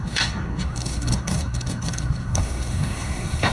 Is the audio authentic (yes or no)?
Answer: no